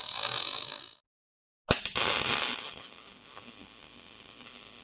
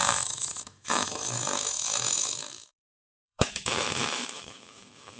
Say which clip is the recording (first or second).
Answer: first